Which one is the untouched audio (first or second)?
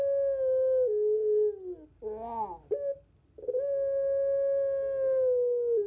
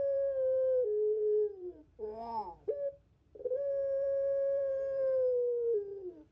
first